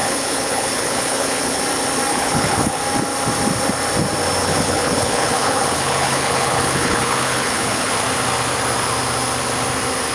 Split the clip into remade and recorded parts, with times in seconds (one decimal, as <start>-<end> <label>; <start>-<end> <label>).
0.0-1.6 remade; 1.6-2.1 recorded; 2.1-2.8 remade; 2.8-4.4 recorded; 4.4-7.9 remade; 7.9-10.1 recorded